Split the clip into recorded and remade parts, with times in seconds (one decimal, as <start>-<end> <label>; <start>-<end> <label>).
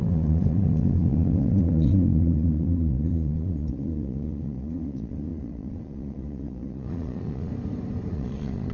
0.0-7.5 remade; 7.5-8.1 recorded; 8.1-8.7 remade